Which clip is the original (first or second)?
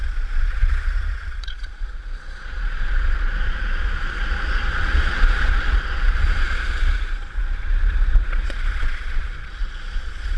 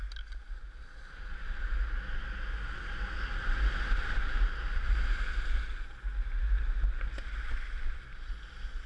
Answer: second